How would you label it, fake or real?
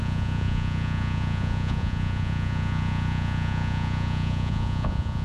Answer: fake